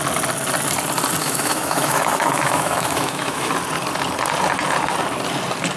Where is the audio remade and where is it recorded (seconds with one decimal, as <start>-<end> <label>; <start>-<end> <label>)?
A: 0.0-1.2 recorded; 1.2-3.5 remade; 3.5-5.8 recorded